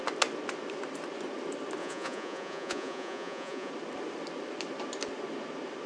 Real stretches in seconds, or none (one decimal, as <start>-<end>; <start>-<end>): 0.0-1.8; 3.7-5.9

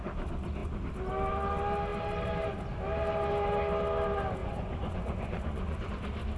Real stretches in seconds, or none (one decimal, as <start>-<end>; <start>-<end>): 0.0-4.4; 5.9-6.4